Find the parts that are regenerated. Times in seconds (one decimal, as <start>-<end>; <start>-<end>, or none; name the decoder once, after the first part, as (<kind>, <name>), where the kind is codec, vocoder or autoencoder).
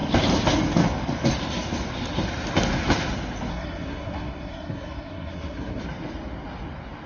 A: 3.5-5.8 (codec, SNAC)